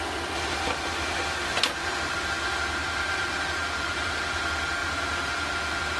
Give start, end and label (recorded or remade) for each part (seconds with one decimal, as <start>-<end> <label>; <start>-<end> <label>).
0.0-1.4 recorded; 1.4-4.2 remade; 4.2-4.8 recorded; 4.8-5.5 remade; 5.5-6.0 recorded